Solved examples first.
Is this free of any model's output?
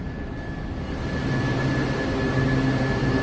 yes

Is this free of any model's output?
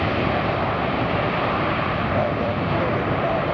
no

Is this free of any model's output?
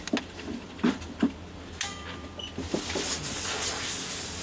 yes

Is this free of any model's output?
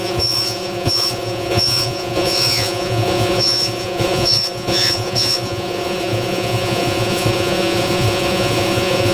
no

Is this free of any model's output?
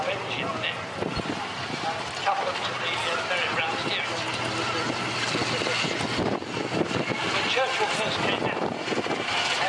yes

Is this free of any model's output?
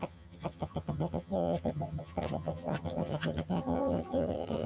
no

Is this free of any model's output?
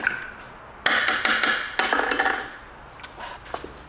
yes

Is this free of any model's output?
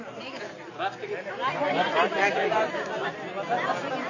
yes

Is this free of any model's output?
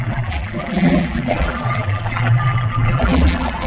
no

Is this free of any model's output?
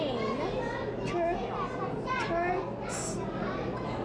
yes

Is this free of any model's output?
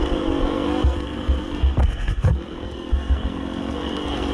no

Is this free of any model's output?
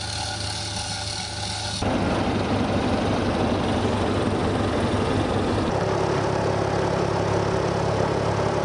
yes